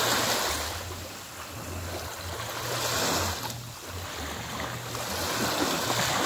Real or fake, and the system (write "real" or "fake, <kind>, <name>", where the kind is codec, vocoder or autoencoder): real